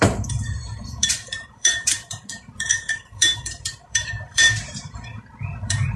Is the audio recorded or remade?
remade